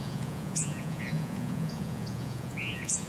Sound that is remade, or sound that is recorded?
remade